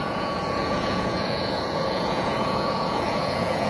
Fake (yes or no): yes